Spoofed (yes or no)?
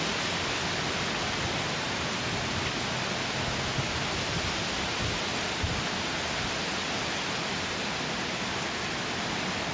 no